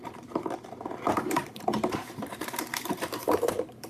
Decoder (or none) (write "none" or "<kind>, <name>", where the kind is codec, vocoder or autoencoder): vocoder, BigVGAN v2